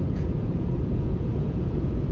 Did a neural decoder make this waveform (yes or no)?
yes